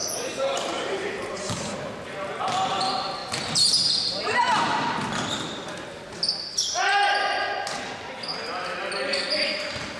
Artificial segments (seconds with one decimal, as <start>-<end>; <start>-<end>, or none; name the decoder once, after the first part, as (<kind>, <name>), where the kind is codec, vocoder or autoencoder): 0.0-2.4 (vocoder, BigVGAN v2)